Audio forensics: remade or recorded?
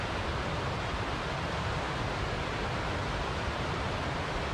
recorded